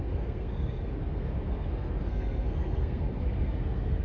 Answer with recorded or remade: remade